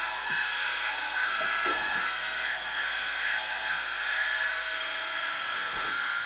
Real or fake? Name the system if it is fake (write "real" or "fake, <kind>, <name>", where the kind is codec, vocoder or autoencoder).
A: fake, codec, SNAC